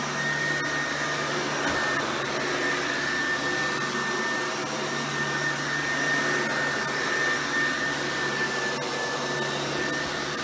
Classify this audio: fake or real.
real